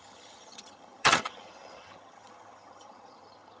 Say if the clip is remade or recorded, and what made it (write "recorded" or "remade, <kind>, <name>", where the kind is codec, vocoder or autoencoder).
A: remade, vocoder, HiFi-GAN